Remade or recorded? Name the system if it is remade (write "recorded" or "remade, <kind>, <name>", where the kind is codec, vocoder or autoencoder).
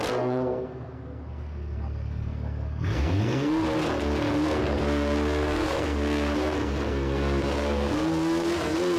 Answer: remade, codec, SNAC